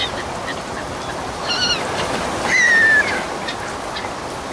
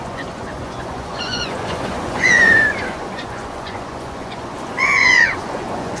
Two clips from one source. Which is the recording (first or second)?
first